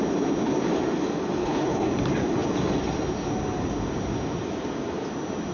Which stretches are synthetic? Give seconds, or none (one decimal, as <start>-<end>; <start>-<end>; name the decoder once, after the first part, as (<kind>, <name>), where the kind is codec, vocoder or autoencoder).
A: 1.4-1.9 (codec, HILCodec)